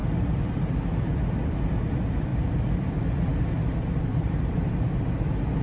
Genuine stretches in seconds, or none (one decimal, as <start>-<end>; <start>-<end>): 0.6-2.3; 2.9-3.3